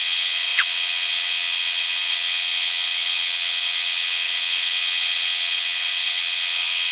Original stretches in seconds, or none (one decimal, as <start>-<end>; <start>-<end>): none